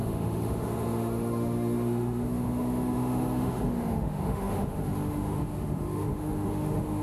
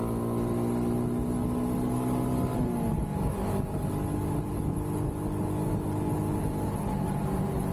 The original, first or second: second